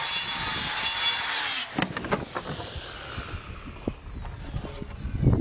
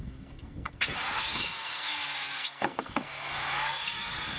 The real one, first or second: first